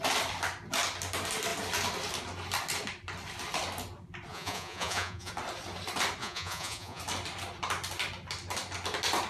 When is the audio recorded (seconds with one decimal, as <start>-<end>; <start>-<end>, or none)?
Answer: 0.0-4.3; 5.3-6.2; 7.0-9.3